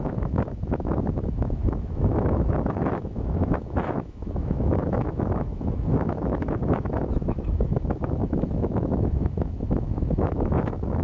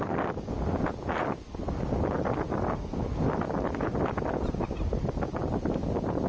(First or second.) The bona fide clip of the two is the second